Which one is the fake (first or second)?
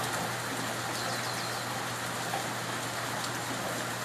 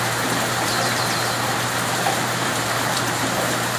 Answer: second